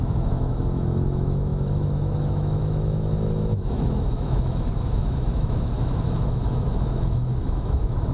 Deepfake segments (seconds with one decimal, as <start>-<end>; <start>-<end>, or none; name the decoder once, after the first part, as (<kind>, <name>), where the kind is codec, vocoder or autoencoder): 0.0-8.1 (autoencoder, DAC-VAE)